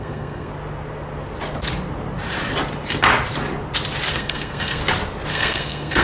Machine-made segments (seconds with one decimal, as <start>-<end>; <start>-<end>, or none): 0.0-0.5; 4.1-4.8; 5.3-6.0